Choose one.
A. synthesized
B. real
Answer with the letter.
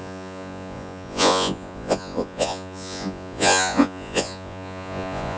A